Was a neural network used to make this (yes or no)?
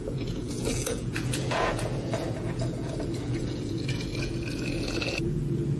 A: yes